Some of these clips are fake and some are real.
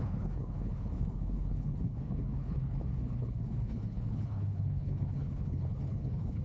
fake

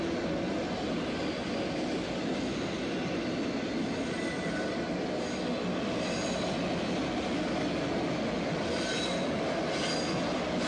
real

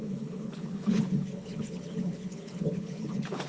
fake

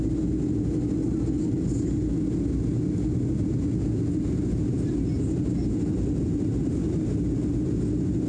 real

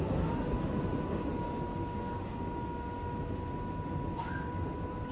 real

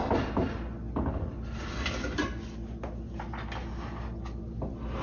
real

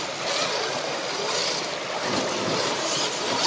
real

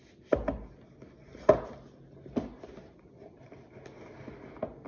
real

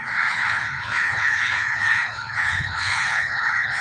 fake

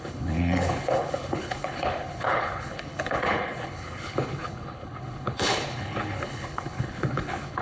fake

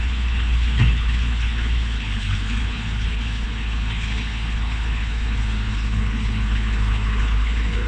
fake